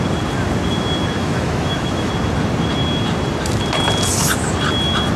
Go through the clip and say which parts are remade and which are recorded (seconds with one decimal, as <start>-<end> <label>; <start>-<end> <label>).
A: 0.0-1.2 recorded; 1.2-2.1 remade; 2.1-5.2 recorded